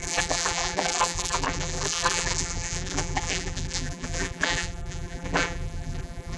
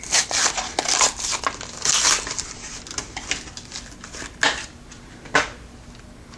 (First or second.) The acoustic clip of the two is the second